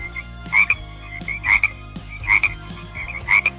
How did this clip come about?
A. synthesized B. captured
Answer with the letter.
A